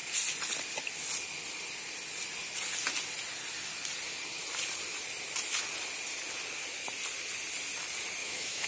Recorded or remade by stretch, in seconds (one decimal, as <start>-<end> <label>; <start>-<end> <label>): 0.0-8.2 recorded; 8.2-8.7 remade